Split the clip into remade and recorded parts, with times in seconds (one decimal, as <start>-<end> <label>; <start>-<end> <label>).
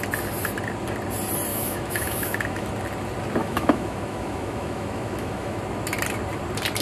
0.0-1.5 recorded; 1.5-2.7 remade; 2.7-3.4 recorded; 3.4-5.6 remade; 5.6-6.8 recorded